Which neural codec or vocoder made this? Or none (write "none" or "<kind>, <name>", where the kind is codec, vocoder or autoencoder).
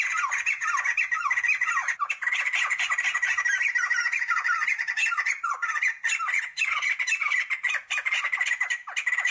vocoder, BigVGAN v2